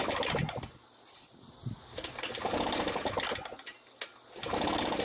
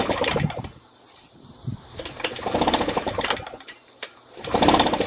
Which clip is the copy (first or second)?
second